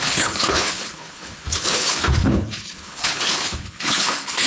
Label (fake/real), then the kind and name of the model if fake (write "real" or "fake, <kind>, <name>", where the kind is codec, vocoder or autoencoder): fake, codec, HILCodec